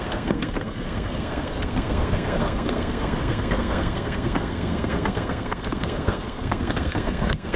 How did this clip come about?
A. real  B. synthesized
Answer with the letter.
B